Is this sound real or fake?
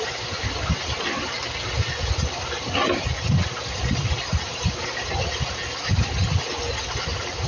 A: real